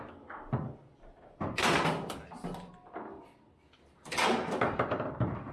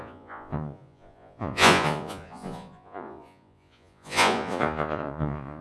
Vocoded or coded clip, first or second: second